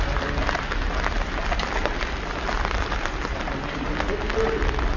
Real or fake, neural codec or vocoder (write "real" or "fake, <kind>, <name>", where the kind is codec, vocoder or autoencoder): real